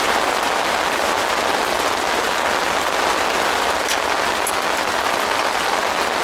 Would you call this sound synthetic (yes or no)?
no